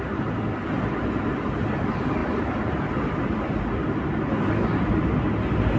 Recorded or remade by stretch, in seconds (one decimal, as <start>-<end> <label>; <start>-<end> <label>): 0.0-5.8 recorded